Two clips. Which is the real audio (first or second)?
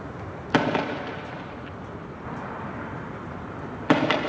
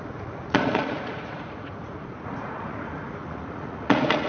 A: first